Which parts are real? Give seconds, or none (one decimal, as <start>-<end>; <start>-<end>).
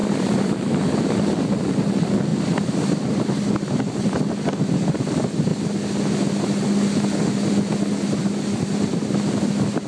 1.8-2.3; 4.2-8.2; 9.4-9.9